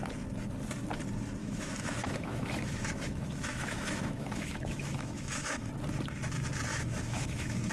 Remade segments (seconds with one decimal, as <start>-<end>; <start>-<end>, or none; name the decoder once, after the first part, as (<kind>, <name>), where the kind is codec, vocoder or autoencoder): 1.4-5.7 (autoencoder, DAC-VAE); 6.7-7.7